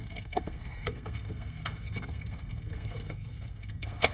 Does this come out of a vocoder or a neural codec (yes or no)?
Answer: yes